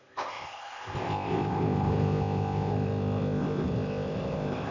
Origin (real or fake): fake